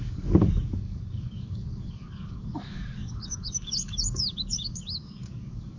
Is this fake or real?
fake